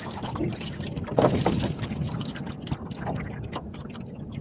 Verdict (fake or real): real